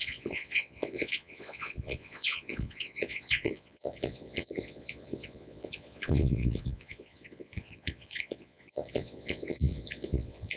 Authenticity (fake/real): fake